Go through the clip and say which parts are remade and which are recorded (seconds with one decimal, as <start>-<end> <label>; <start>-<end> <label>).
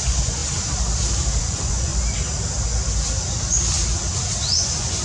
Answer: 0.0-0.4 remade; 0.4-1.4 recorded; 1.4-1.9 remade; 1.9-4.6 recorded; 4.6-5.0 remade